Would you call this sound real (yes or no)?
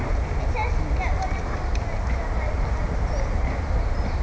yes